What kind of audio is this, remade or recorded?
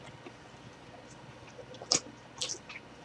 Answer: recorded